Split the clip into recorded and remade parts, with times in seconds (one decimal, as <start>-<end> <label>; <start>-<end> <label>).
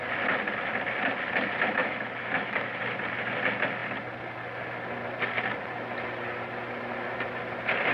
0.0-1.8 recorded; 1.8-2.8 remade; 2.8-7.9 recorded